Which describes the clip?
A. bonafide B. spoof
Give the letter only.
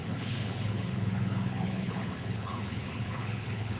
B